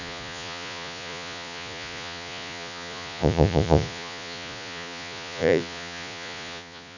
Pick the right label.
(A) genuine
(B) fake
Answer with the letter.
B